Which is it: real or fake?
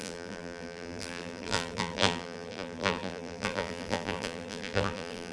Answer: fake